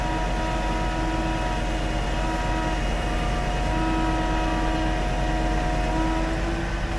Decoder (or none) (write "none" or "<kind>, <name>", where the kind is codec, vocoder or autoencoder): none